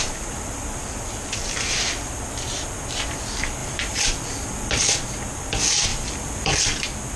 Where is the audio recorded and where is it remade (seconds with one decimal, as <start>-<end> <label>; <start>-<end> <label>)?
0.0-1.5 remade; 1.5-3.6 recorded; 3.6-4.9 remade; 4.9-5.9 recorded; 5.9-6.6 remade; 6.6-7.2 recorded

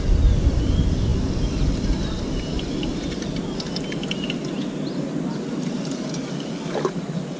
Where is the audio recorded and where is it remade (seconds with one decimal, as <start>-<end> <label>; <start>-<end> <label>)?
0.0-7.4 recorded

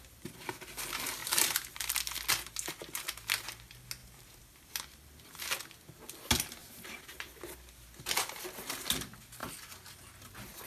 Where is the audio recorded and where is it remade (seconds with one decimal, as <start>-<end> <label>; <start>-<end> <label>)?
0.0-1.2 recorded; 1.2-1.9 remade; 1.9-4.0 recorded; 4.0-4.7 remade; 4.7-6.6 recorded; 6.6-7.4 remade; 7.4-10.7 recorded

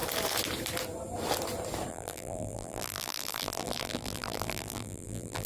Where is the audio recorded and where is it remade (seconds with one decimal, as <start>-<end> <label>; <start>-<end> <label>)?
0.0-1.9 recorded; 1.9-5.5 remade

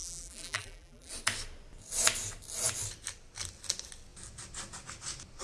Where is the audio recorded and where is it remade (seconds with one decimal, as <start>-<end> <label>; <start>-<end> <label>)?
0.0-1.1 remade; 1.1-5.4 recorded

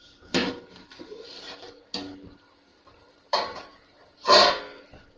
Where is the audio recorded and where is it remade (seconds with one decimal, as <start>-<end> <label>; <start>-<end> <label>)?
0.0-0.4 recorded; 0.4-1.8 remade; 1.8-2.7 recorded; 2.7-4.6 remade; 4.6-5.2 recorded

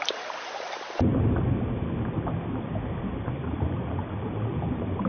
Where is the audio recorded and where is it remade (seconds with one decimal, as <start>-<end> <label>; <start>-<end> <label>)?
0.0-1.1 remade; 1.1-3.0 recorded; 3.0-5.1 remade